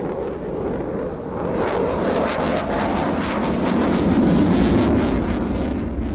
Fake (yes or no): no